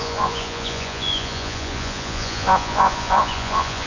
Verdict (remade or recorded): remade